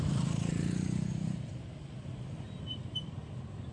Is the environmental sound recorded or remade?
recorded